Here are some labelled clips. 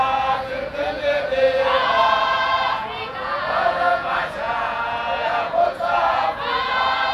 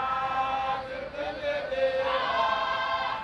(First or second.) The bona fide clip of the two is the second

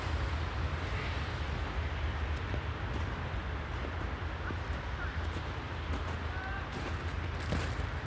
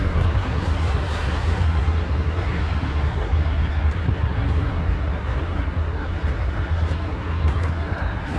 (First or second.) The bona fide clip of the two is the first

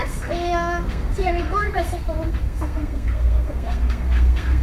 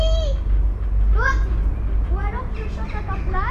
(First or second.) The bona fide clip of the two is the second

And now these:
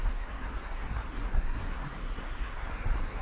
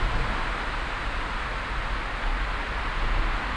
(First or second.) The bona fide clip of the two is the second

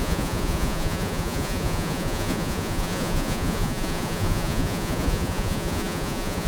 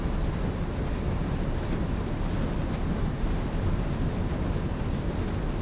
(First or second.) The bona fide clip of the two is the second